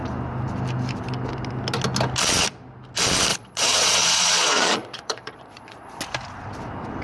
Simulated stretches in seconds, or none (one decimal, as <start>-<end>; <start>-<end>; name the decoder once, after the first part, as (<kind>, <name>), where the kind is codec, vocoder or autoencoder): 3.3-6.0 (vocoder, Vocos)